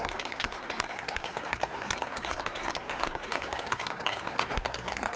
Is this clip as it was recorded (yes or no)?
no